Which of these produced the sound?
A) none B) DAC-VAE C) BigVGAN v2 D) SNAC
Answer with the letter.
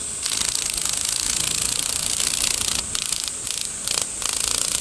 A